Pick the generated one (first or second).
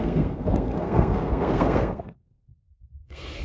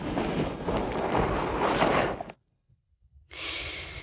first